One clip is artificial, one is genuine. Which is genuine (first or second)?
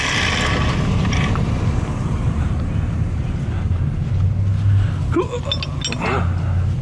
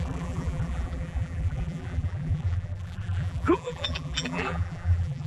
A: first